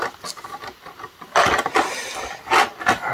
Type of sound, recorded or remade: recorded